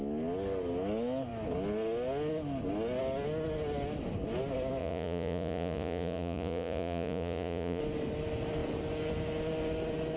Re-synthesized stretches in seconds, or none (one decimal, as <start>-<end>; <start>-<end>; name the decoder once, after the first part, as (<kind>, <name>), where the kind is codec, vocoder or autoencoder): 4.8-7.8 (vocoder, Vocos)

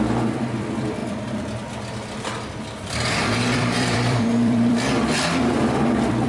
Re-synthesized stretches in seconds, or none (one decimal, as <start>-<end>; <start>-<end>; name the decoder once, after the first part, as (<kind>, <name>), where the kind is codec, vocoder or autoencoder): 0.0-6.3 (vocoder, BigVGAN v2)

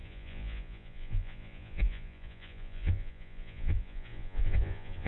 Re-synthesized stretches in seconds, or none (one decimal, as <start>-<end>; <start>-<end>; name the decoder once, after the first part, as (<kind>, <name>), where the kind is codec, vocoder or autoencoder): 0.0-5.1 (vocoder, Vocos)